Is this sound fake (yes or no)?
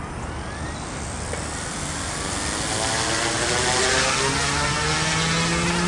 no